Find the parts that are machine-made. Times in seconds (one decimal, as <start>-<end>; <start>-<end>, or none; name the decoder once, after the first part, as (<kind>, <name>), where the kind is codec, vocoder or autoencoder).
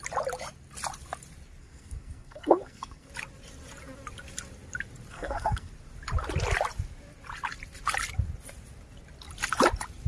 1.6-3.1 (codec, SNAC); 5.1-5.7